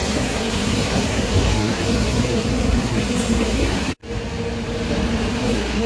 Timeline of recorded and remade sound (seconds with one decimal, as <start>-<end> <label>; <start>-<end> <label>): 0.0-4.0 remade; 4.0-5.3 recorded; 5.3-5.9 remade